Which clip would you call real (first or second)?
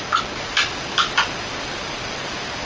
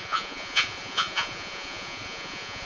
first